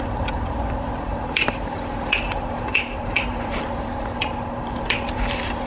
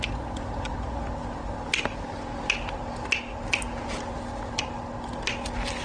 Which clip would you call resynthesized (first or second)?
first